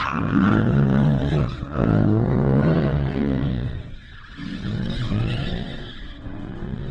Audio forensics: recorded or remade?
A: remade